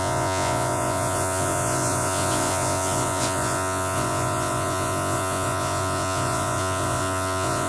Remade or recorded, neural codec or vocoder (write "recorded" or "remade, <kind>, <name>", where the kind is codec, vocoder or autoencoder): remade, vocoder, Vocos